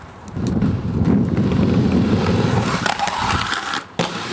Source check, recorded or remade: recorded